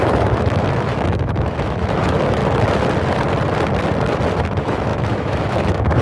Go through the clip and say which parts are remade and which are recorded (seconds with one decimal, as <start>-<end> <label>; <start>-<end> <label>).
0.0-2.4 remade; 2.4-4.3 recorded; 4.3-6.0 remade